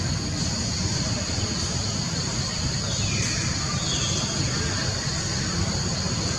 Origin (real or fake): real